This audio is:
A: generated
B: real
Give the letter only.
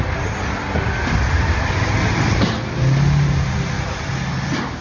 B